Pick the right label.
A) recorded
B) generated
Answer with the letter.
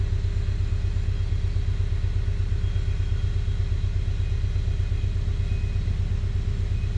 A